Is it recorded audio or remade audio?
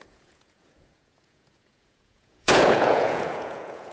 remade